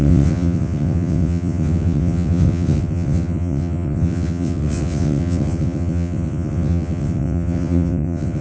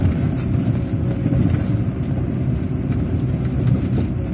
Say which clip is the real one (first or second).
second